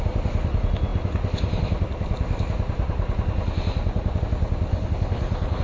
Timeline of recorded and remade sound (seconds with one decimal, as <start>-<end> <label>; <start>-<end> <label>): 0.0-4.7 recorded; 4.7-5.6 remade